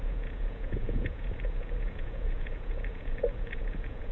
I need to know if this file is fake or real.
fake